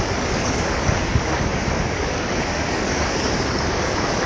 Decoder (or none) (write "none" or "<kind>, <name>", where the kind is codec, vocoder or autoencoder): codec, DAC